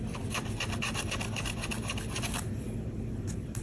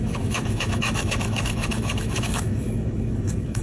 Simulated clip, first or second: second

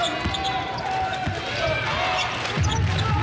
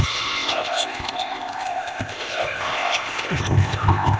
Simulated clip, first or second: second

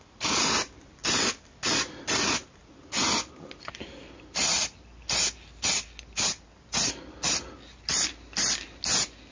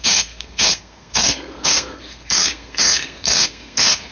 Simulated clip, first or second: second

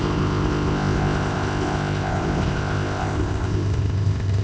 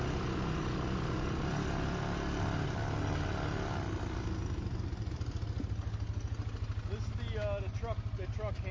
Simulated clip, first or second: first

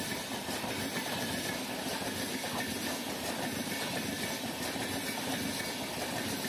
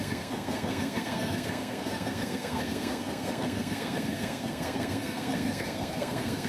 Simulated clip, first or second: second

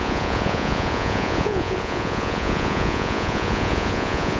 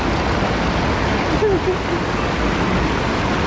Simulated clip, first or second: first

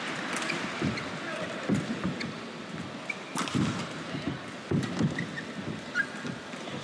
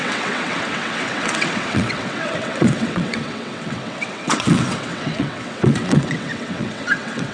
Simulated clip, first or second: second